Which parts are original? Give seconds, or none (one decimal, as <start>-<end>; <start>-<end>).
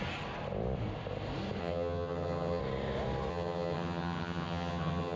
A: 0.0-1.6; 2.6-3.3